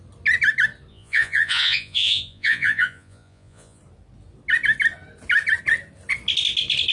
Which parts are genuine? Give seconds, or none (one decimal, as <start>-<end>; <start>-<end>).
0.0-0.9; 3.8-6.9